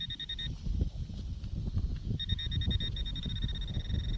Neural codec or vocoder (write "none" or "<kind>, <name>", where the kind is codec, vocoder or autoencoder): none